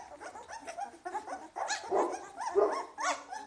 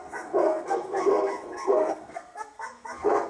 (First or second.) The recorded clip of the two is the first